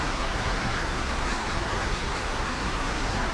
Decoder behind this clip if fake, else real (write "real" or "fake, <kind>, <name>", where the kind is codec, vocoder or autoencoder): fake, codec, SNAC